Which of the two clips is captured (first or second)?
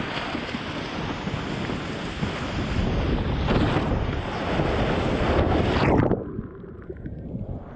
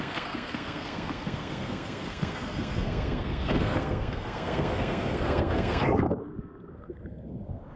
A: first